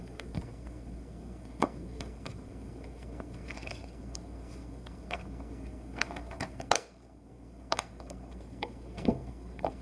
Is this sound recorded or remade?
remade